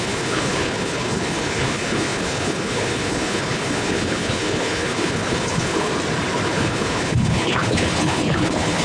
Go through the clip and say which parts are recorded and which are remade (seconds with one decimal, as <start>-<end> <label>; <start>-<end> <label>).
0.0-5.9 remade; 5.9-6.5 recorded; 6.5-8.8 remade